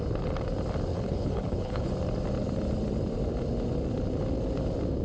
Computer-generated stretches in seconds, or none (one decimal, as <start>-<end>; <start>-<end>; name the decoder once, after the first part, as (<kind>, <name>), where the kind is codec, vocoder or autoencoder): 0.9-1.9 (codec, HILCodec)